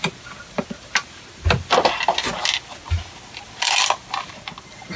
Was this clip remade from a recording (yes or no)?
no